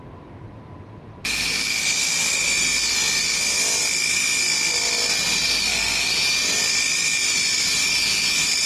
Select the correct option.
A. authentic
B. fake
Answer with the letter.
A